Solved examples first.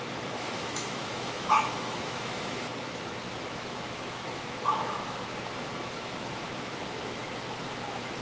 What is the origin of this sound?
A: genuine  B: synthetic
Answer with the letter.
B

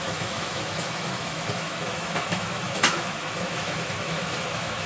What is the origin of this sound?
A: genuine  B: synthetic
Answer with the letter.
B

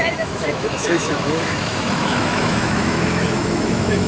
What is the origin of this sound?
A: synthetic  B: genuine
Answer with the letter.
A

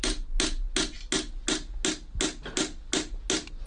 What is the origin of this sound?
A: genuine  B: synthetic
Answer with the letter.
A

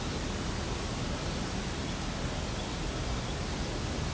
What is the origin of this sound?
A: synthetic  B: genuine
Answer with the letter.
B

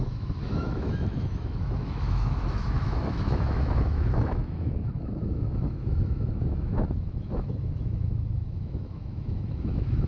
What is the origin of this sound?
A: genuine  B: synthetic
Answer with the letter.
B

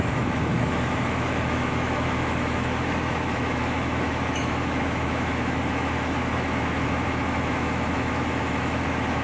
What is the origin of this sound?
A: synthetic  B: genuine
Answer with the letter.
A